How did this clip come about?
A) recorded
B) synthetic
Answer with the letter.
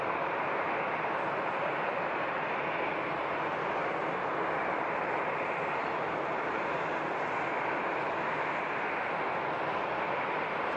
A